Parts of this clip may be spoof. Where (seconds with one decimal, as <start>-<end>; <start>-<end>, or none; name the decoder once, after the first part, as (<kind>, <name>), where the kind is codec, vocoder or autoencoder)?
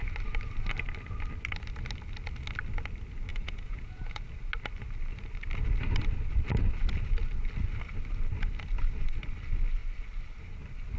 3.3-4.2 (vocoder, Vocos)